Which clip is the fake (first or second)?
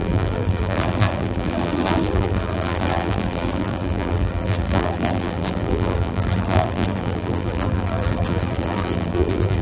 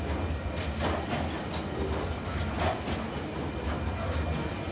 first